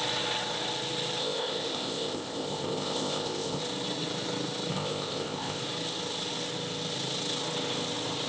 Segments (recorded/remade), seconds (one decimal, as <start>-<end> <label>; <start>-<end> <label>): 0.0-1.2 recorded; 1.2-3.6 remade; 3.6-4.7 recorded; 4.7-5.6 remade; 5.6-8.3 recorded